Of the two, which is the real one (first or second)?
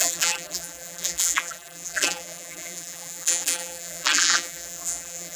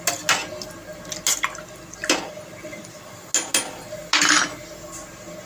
second